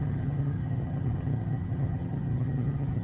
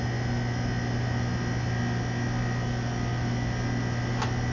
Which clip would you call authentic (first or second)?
second